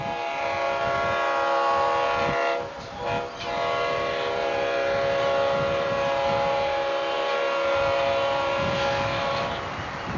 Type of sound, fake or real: real